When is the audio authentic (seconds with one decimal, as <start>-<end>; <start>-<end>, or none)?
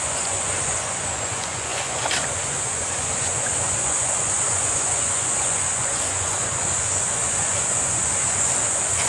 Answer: none